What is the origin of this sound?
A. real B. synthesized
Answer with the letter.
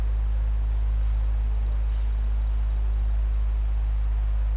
A